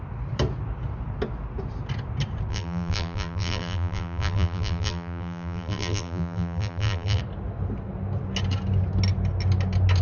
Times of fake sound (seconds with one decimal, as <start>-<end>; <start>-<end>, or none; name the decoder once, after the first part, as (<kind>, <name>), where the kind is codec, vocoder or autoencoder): 2.5-7.2 (vocoder, BigVGAN v2)

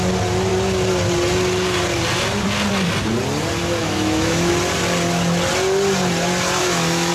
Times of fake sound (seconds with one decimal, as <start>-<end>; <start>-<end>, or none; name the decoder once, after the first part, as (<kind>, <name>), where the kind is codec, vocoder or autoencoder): 3.8-4.5 (autoencoder, DAC-VAE); 6.6-7.1

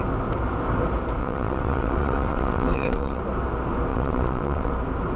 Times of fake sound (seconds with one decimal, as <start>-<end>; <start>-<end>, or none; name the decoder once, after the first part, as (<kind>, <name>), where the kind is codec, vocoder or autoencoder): 1.2-3.2 (vocoder, WaveNeXt); 3.9-4.7

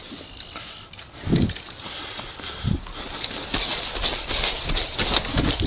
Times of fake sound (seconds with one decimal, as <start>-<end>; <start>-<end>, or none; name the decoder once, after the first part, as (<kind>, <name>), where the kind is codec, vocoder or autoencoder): none

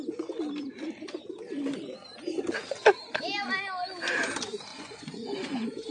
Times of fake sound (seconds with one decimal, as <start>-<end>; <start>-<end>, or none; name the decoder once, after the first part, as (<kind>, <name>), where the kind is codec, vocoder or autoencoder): 4.7-5.9 (vocoder, Vocos)

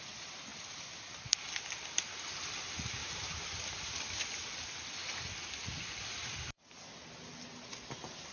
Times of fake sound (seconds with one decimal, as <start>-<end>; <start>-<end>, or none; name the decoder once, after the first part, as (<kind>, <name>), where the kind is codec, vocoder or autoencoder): none

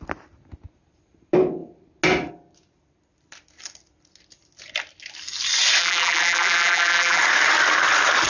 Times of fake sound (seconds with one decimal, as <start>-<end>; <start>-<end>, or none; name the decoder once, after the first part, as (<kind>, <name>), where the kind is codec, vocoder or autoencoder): 5.8-7.2 (vocoder, BigVGAN v2)

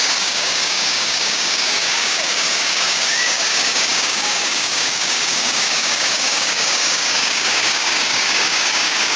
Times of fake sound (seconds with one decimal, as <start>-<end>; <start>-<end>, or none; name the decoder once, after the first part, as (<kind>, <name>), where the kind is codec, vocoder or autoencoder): 0.0-9.2 (codec, DAC)